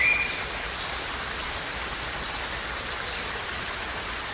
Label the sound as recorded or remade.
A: recorded